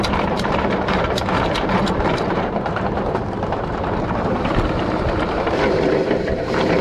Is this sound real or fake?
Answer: fake